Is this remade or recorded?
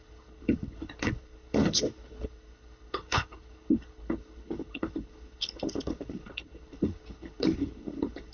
remade